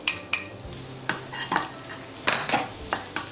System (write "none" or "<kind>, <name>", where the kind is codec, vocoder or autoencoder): none